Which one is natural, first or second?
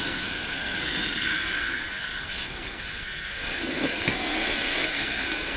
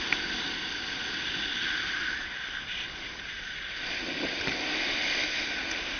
second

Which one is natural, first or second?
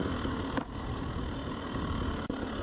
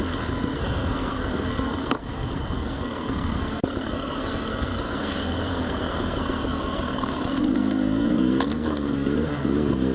first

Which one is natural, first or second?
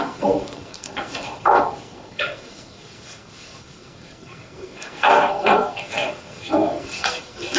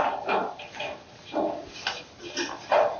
second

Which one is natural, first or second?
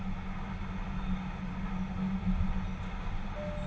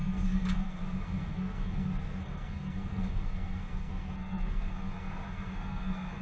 first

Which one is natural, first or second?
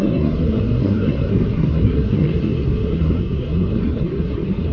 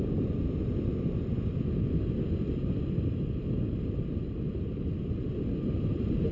second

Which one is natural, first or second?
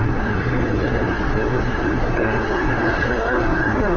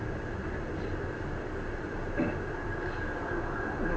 second